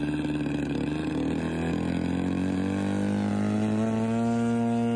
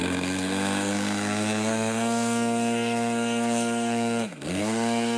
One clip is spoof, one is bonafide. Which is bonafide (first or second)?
first